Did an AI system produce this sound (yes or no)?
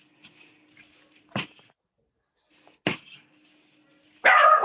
no